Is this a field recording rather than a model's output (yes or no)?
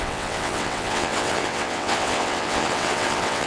no